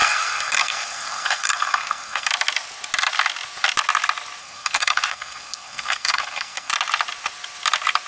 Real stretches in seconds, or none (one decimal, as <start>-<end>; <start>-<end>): 2.3-4.4; 6.7-8.1